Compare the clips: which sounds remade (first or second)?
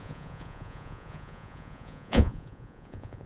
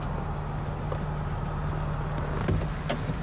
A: first